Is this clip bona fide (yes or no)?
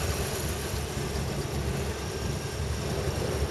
yes